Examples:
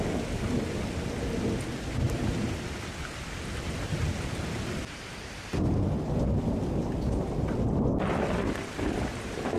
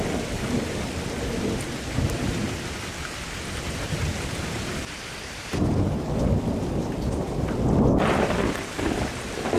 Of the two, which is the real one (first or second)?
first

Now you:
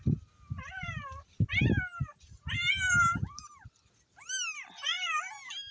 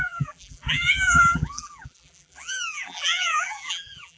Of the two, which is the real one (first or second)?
first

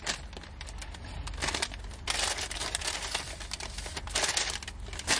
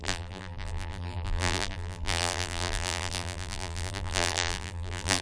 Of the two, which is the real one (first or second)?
first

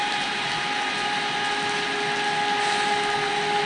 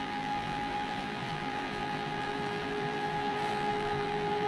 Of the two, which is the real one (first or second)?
first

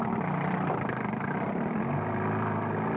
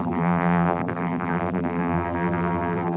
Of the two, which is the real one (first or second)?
first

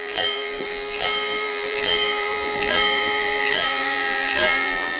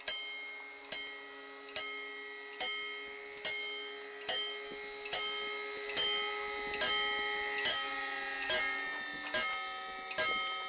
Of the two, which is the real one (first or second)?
second